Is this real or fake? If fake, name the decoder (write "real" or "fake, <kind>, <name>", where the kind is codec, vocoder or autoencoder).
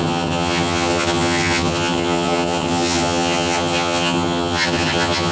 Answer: fake, vocoder, HiFi-GAN